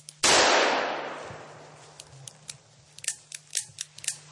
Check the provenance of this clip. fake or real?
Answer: real